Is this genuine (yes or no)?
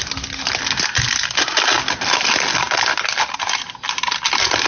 yes